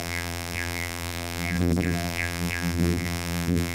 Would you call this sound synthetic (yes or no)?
yes